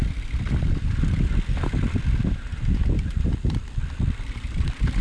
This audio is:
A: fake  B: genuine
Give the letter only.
A